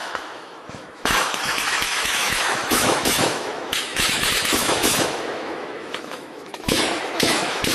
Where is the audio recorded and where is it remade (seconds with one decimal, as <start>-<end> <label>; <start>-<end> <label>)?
0.0-7.7 remade